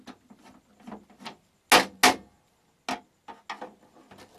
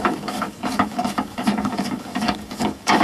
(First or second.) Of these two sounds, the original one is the first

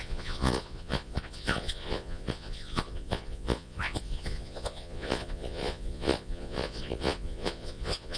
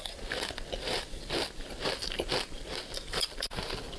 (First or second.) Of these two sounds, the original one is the second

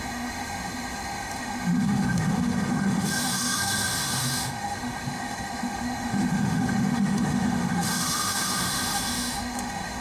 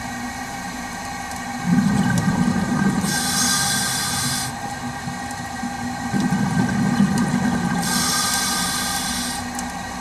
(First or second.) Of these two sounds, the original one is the second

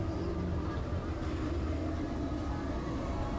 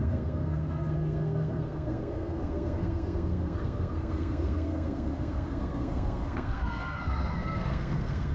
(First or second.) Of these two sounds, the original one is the first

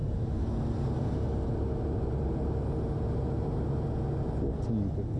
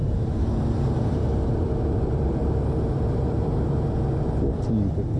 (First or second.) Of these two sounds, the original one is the first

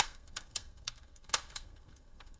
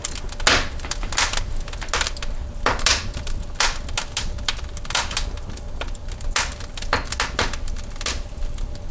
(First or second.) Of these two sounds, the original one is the second